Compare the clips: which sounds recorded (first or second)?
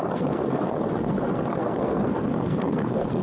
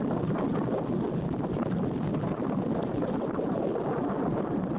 second